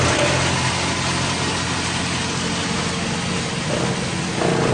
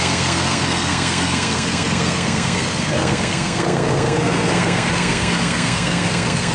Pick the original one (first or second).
first